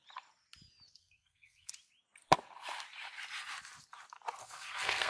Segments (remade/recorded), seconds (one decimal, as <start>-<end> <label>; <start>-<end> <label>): 0.0-1.0 recorded; 1.0-1.7 remade; 1.7-4.4 recorded; 4.4-5.1 remade